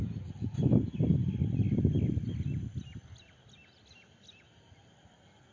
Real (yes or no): yes